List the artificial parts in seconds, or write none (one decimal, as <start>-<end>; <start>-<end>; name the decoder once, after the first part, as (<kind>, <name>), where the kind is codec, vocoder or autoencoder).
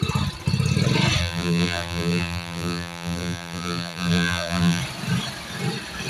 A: 1.2-4.8 (vocoder, BigVGAN v2)